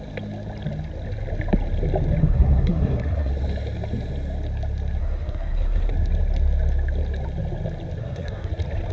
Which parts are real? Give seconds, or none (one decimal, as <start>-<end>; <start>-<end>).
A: 0.0-2.2; 3.3-5.0; 5.9-8.0; 8.5-8.9

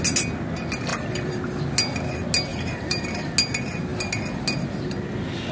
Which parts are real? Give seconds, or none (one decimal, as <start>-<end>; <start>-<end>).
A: 0.0-0.9; 1.4-2.5; 3.0-5.5